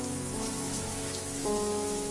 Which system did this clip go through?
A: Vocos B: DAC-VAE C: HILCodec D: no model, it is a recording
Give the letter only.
B